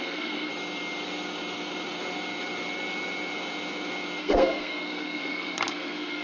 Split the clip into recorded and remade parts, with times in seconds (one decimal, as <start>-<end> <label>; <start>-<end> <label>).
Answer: 0.0-0.5 remade; 0.5-4.2 recorded; 4.2-6.2 remade